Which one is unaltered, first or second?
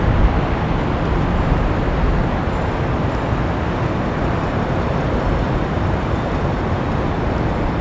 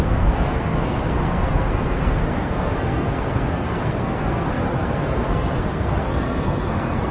first